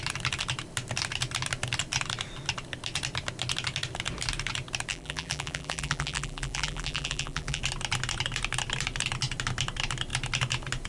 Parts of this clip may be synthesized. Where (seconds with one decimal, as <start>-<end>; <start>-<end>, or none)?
4.9-7.6